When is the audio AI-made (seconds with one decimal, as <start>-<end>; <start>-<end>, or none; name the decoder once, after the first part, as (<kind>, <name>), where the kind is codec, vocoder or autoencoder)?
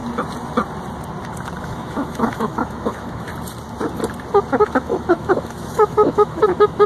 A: 1.6-3.3 (autoencoder, DAC-VAE); 4.6-6.9